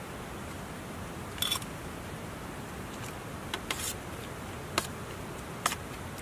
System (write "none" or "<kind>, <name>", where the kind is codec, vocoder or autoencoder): none